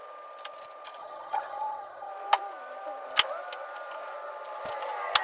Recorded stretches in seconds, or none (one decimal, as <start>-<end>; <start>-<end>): 0.0-1.0; 2.1-5.2